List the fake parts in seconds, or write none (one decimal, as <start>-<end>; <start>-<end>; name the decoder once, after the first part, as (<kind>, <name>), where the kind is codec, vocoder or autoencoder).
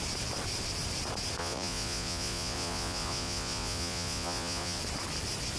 1.4-4.8 (vocoder, Vocos)